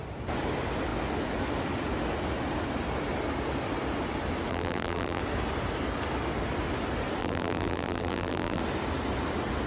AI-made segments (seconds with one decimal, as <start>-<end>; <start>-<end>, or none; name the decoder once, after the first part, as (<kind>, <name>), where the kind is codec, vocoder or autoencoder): 4.5-5.2 (vocoder, BigVGAN v2); 7.2-8.6